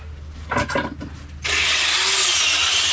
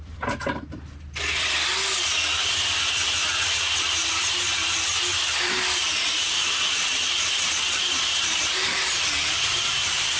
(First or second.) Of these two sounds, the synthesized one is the second